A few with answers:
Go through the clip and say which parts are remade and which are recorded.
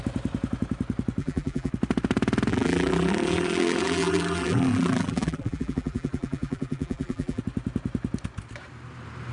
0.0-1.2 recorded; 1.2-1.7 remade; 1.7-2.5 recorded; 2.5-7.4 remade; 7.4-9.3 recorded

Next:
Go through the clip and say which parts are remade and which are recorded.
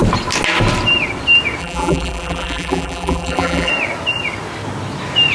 0.0-1.6 recorded; 1.6-3.7 remade; 3.7-5.3 recorded